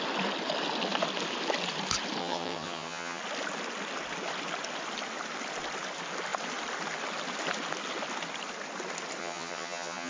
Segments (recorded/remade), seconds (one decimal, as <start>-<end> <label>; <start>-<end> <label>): 0.0-2.2 recorded; 2.2-3.2 remade; 3.2-9.2 recorded; 9.2-10.1 remade